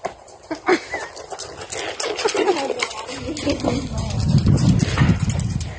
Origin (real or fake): real